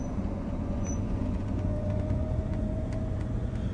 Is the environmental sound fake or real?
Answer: fake